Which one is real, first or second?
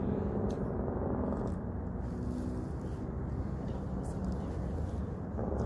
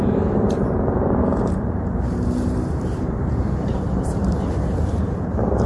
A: first